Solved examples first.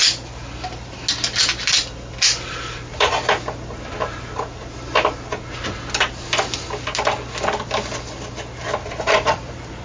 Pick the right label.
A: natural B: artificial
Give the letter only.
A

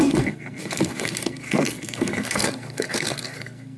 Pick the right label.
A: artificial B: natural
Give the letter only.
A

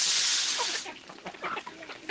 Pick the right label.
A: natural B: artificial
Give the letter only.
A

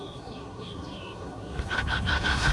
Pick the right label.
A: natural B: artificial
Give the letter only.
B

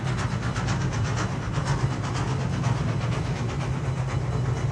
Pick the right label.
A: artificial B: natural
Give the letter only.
B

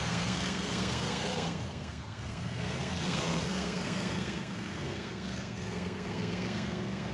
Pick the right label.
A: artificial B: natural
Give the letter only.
A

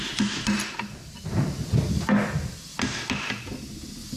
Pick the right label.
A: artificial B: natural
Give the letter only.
B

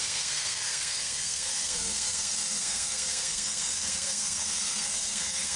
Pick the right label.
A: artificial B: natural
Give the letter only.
A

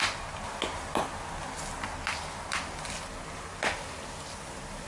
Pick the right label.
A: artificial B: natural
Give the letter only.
B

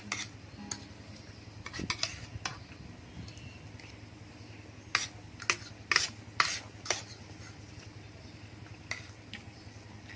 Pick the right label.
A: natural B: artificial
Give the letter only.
A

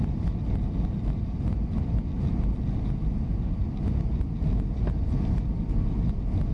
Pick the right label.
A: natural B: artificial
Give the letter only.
A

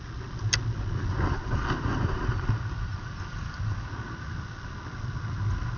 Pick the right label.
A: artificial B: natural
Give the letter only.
B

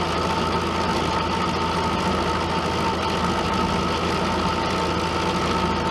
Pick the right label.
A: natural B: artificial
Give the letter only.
A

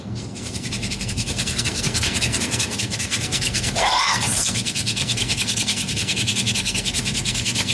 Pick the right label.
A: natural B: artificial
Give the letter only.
B